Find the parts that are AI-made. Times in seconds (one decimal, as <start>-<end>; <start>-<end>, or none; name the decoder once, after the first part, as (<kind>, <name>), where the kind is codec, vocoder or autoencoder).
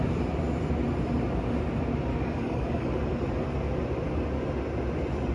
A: 2.1-3.0 (codec, DAC)